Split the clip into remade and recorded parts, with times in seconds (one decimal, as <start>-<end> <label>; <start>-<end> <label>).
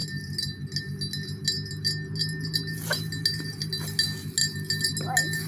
0.0-5.5 recorded